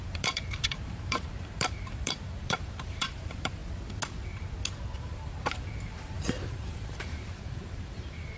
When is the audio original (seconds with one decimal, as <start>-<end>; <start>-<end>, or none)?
3.6-5.0